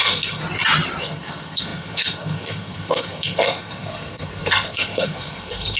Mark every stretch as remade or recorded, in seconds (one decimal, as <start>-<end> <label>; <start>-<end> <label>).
0.0-0.4 remade; 0.4-1.0 recorded; 1.0-5.8 remade